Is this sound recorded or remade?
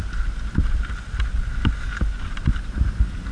recorded